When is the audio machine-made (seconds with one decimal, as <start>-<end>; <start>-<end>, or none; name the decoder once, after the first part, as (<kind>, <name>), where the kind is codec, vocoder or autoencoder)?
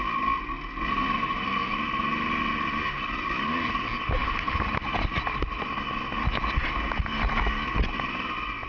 none